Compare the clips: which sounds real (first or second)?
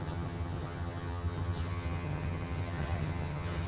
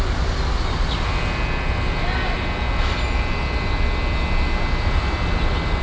second